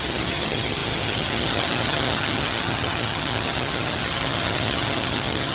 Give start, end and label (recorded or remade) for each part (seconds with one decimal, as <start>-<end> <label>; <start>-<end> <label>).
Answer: 0.0-5.5 remade